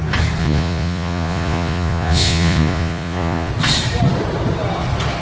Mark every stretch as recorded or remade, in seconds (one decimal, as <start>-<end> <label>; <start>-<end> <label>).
0.0-0.4 recorded; 0.4-3.5 remade; 3.5-5.2 recorded